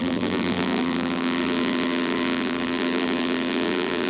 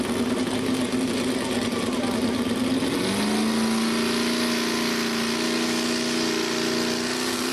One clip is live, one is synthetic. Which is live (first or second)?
second